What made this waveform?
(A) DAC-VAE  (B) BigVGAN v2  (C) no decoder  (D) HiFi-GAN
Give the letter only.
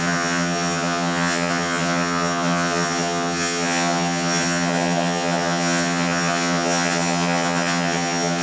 D